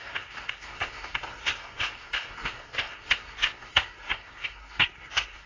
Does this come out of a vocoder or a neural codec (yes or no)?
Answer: yes